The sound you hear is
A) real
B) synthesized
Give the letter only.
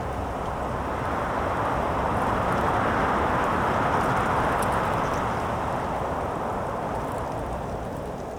A